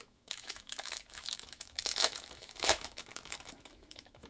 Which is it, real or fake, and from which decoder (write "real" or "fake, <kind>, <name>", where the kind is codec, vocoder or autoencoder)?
fake, autoencoder, DAC-VAE